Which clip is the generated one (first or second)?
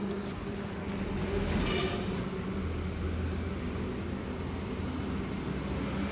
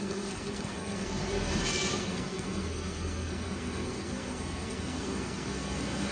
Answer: second